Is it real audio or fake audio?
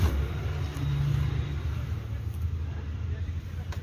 real